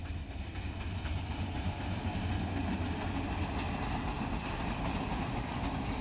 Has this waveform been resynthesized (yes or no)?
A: no